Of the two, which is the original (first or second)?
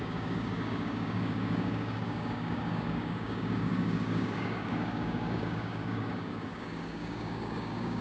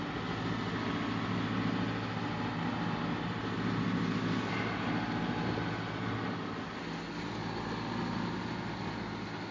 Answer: second